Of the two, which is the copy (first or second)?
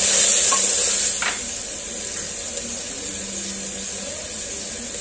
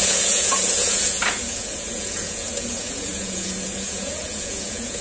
second